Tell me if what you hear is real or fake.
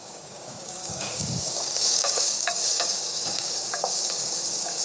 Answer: fake